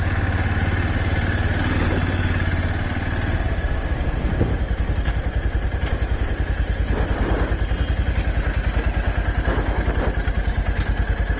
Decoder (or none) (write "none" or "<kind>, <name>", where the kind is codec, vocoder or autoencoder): none